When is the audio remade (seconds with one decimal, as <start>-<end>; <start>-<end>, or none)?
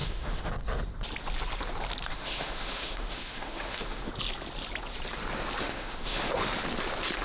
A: 0.0-0.5; 2.1-4.1; 5.6-6.3